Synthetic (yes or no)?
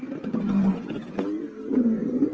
no